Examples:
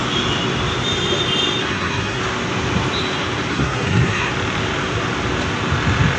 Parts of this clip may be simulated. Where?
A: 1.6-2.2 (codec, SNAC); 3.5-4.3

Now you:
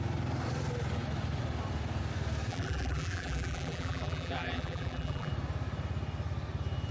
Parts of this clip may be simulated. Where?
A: 2.5-5.3 (vocoder, BigVGAN v2)

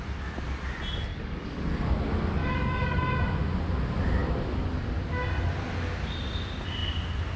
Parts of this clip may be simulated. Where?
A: 1.1-1.7 (codec, DAC); 2.4-3.2

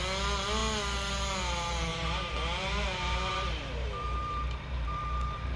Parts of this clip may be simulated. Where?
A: 1.9-5.6 (vocoder, BigVGAN v2)

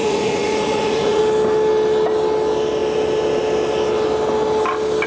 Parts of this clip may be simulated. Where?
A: 0.0-1.2 (vocoder, Vocos)

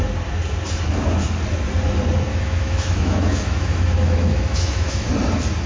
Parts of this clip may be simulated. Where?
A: 2.3-5.1 (autoencoder, DAC-VAE)

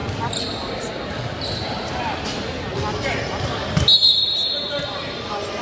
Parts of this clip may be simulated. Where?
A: none

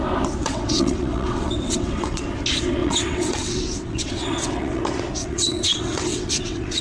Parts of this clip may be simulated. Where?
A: 0.4-2.2 (vocoder, WaveNeXt); 2.8-4.8; 5.2-6.8